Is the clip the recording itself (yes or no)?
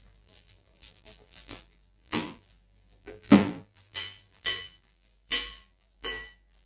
no